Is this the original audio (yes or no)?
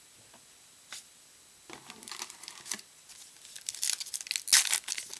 yes